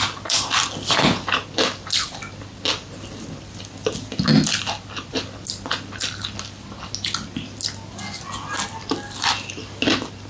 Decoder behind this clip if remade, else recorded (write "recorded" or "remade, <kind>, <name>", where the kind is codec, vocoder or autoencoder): recorded